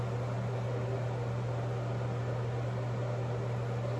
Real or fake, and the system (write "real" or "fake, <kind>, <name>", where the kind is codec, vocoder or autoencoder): real